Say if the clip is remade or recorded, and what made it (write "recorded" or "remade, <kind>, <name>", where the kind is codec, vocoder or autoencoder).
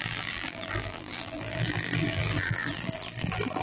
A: remade, vocoder, BigVGAN v2